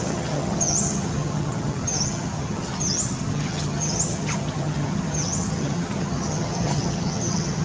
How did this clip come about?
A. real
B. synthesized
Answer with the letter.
B